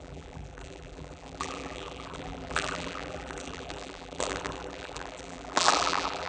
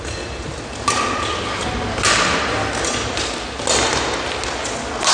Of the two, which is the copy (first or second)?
first